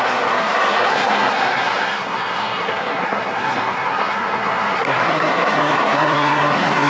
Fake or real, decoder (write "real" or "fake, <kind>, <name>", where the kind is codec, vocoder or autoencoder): fake, codec, SNAC